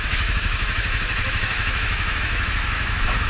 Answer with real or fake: fake